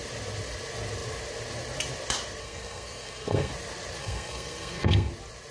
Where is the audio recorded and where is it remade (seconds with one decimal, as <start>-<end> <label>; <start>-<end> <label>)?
0.0-2.4 recorded; 2.4-3.5 remade; 3.5-4.0 recorded; 4.0-5.1 remade; 5.1-5.5 recorded